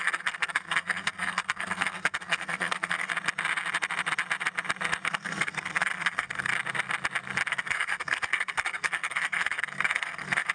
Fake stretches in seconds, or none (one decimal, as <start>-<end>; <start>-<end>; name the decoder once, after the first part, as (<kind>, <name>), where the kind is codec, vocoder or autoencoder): 0.0-3.1 (codec, SNAC); 5.1-6.5; 7.5-10.5